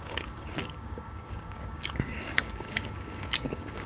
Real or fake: fake